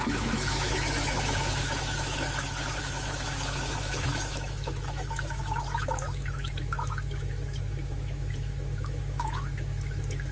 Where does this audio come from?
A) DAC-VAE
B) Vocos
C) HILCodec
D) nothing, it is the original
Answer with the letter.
A